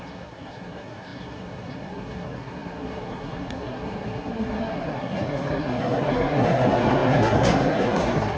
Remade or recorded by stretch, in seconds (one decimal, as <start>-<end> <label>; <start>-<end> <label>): 0.0-8.4 remade